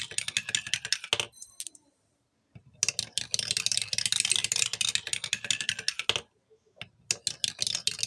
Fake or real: real